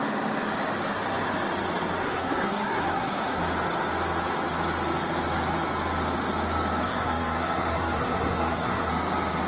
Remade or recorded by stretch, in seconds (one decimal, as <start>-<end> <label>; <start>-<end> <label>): 0.0-2.0 recorded; 2.0-3.4 remade; 3.4-6.8 recorded; 6.8-8.9 remade; 8.9-9.5 recorded